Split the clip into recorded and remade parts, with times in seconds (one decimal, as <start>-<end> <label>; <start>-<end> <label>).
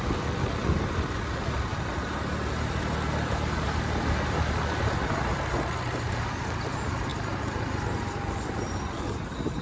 0.0-9.6 recorded